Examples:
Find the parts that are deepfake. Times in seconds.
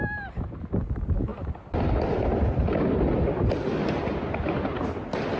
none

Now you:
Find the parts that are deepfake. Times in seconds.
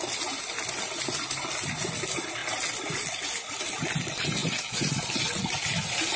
none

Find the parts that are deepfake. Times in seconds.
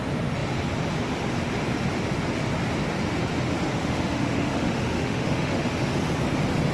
3.7-5.9 (autoencoder, DAC-VAE)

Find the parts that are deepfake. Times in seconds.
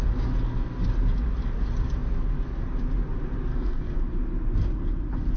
3.5-4.0 (codec, SNAC)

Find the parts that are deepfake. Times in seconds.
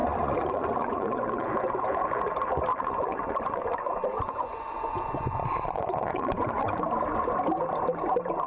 0.0-1.5 (vocoder, Vocos); 2.7-6.8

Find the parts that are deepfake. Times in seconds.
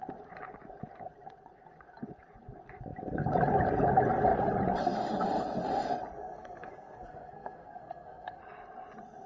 6.2-8.4 (codec, SNAC)